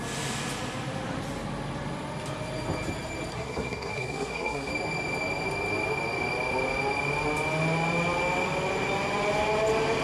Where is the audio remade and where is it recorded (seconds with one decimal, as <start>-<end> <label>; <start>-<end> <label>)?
0.0-3.3 recorded; 3.3-4.7 remade; 4.7-10.0 recorded

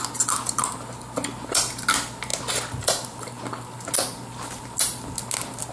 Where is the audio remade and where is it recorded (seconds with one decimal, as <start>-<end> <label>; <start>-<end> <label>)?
0.0-5.7 recorded

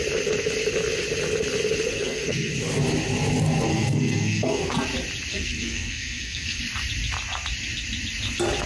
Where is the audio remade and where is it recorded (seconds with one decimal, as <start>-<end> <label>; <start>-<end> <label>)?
0.0-1.9 recorded; 1.9-2.5 remade; 2.5-3.7 recorded; 3.7-4.7 remade; 4.7-5.3 recorded; 5.3-6.6 remade; 6.6-8.7 recorded